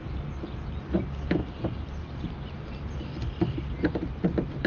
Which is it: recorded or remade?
recorded